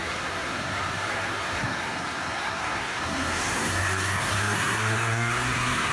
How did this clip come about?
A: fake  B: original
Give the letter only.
A